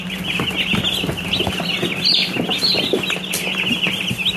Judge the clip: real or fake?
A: real